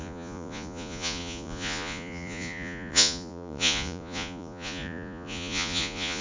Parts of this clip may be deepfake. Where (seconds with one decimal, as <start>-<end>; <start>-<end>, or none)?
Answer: 0.0-6.2